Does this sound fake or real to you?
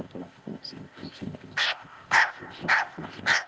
fake